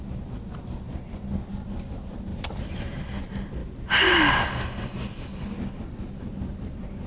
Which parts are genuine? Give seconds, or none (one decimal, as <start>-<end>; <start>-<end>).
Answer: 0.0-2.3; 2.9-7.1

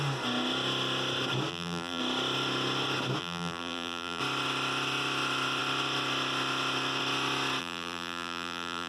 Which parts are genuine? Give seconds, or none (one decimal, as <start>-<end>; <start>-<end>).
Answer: 0.0-1.5; 2.0-3.2; 4.2-7.6

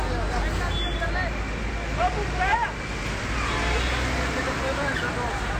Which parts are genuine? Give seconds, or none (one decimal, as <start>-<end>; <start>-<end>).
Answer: 0.0-5.6